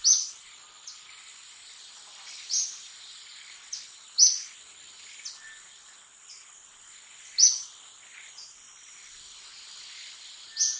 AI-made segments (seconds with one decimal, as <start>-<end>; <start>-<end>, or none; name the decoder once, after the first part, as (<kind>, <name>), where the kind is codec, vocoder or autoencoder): none